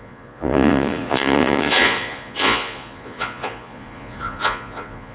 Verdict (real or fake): fake